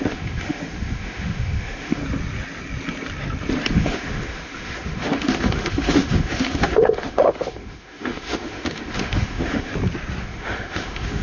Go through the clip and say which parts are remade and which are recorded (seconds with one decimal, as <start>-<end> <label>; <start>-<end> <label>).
0.0-2.0 remade; 2.0-3.7 recorded; 3.7-9.7 remade; 9.7-10.2 recorded; 10.2-11.2 remade